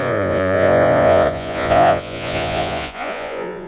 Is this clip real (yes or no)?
no